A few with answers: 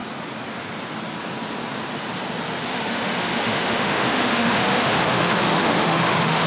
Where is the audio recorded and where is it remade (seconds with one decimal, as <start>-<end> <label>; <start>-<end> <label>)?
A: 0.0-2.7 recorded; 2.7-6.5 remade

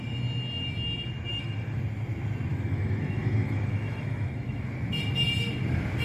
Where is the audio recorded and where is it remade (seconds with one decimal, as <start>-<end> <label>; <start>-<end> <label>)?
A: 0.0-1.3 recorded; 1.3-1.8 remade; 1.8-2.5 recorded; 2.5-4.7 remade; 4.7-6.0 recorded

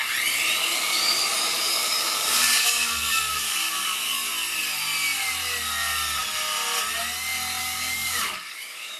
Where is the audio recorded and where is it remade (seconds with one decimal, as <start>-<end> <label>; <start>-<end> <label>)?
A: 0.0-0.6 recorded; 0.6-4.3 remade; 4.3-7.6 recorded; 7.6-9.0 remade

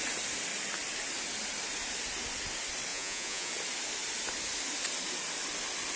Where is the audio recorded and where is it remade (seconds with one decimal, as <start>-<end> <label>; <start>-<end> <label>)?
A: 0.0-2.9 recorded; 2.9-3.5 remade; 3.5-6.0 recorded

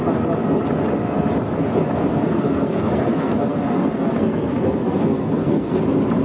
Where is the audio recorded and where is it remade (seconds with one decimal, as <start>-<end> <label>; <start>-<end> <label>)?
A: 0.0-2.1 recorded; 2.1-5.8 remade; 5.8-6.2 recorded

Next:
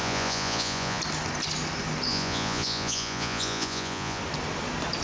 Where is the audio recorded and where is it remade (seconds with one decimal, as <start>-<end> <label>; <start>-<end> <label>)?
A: 0.0-1.0 remade; 1.0-2.1 recorded; 2.1-4.2 remade; 4.2-5.0 recorded

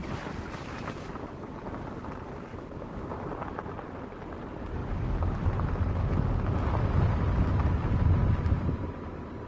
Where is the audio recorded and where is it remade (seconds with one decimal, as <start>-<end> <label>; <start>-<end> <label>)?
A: 0.0-4.8 recorded; 4.8-5.6 remade; 5.6-9.5 recorded